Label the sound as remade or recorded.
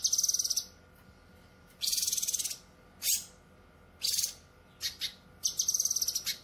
recorded